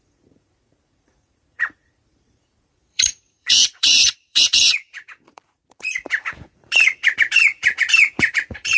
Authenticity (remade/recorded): remade